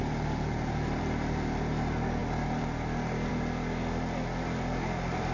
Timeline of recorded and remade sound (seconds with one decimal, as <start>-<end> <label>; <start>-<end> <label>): 0.0-5.3 recorded